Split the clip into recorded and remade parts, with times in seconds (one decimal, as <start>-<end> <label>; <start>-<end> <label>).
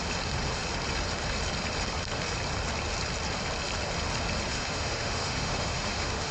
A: 0.0-4.5 recorded; 4.5-6.3 remade